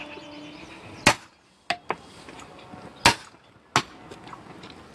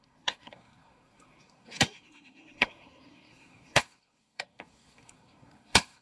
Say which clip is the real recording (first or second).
first